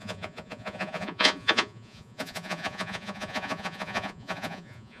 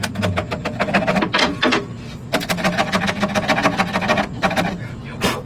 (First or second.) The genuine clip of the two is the second